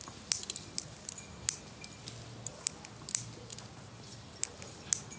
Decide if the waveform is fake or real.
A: real